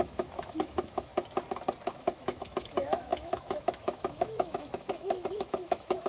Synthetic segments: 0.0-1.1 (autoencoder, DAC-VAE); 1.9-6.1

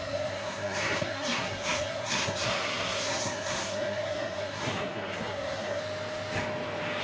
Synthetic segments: 0.0-5.8 (codec, SNAC)